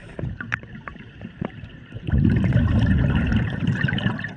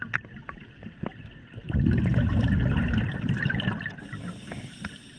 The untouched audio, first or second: second